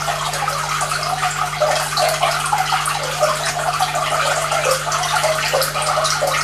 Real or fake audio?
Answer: real